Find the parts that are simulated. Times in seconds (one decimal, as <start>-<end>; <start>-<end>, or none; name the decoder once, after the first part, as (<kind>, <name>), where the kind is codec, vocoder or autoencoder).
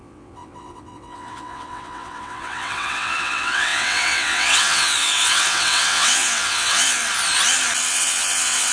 0.0-7.0 (vocoder, WaveNeXt); 7.9-8.7